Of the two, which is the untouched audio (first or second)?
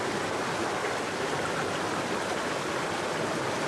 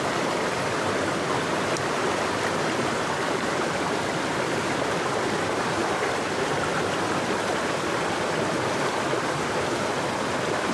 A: first